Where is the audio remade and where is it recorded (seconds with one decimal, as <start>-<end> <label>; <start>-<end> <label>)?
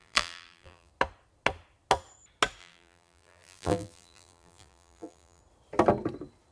0.0-0.9 remade; 0.9-2.6 recorded; 2.6-5.4 remade; 5.4-6.5 recorded